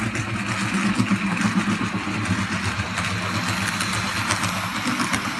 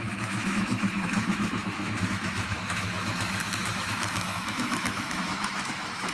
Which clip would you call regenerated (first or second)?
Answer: second